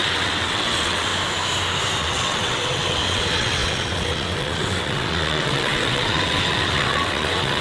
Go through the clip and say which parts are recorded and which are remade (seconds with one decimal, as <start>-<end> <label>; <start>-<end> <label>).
0.0-1.1 remade; 1.1-2.0 recorded; 2.0-7.6 remade